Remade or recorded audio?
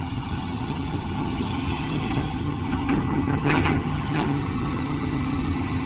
remade